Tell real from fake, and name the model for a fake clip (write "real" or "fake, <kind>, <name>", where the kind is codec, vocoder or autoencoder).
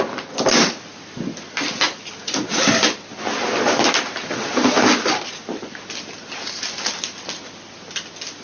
real